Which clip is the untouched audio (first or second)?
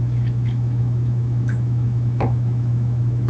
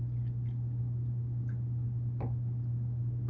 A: second